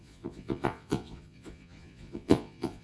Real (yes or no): no